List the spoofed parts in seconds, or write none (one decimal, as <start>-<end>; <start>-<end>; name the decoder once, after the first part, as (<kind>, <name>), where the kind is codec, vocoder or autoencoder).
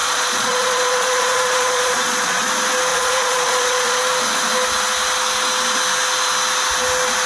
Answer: 0.0-2.5 (vocoder, Vocos); 2.9-4.0